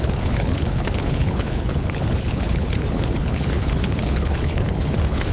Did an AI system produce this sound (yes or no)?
yes